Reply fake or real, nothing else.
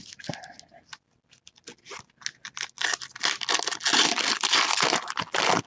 real